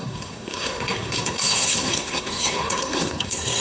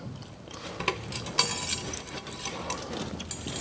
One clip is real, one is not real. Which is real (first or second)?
second